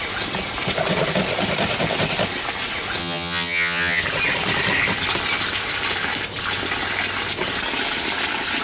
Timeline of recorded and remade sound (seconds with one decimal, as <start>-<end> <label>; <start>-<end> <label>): 0.0-3.0 recorded; 3.0-4.0 remade; 4.0-8.6 recorded